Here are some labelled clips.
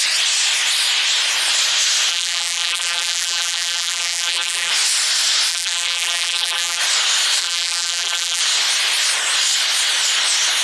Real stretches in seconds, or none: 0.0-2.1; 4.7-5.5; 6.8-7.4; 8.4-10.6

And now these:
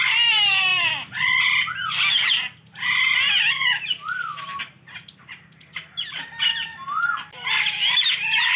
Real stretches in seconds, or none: 0.0-8.6